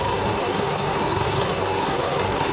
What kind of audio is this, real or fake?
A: fake